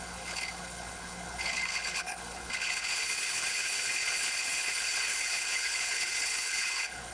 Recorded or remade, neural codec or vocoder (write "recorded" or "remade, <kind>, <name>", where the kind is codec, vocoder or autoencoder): remade, codec, HILCodec